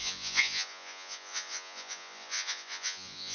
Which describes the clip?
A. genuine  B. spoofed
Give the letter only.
B